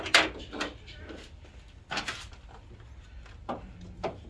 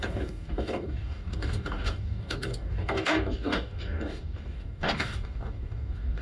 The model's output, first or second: second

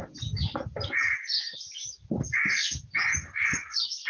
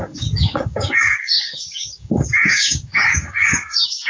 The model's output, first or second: second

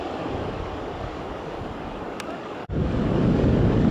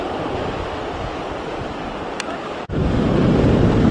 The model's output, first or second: first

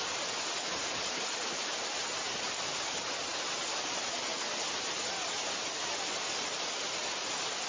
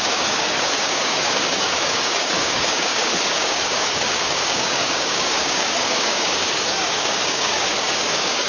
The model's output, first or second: second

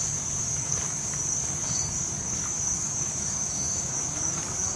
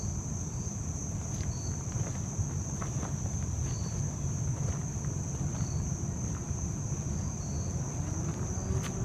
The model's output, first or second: first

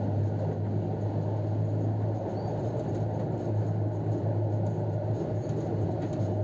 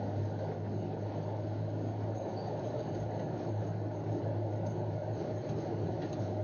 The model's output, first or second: second